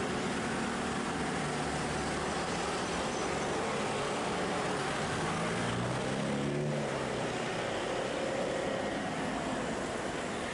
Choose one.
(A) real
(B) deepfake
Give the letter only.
A